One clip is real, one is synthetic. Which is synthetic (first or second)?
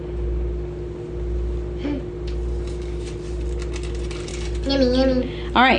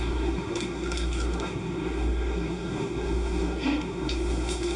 second